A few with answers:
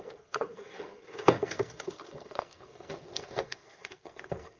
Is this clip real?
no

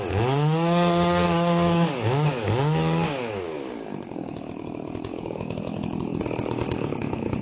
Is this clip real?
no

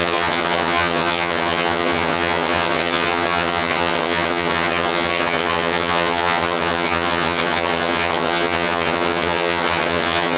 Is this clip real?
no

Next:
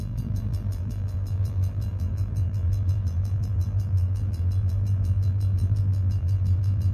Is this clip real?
no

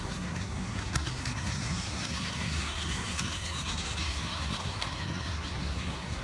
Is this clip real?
no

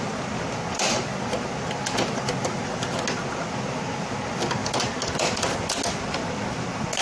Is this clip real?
yes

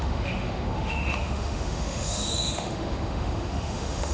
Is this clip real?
no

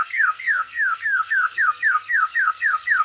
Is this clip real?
no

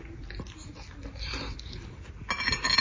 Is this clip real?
yes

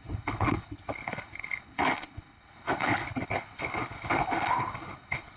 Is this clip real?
no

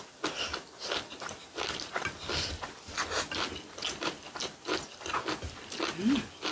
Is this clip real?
yes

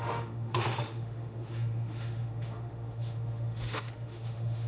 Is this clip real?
no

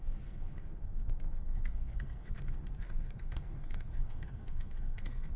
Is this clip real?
no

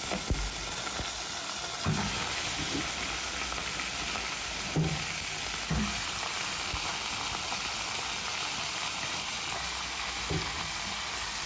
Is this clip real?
yes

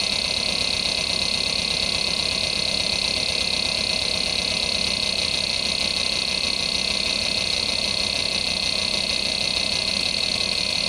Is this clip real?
yes